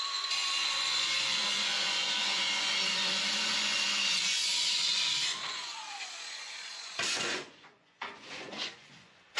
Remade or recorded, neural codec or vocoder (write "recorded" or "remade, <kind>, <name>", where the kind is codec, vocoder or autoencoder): remade, vocoder, Vocos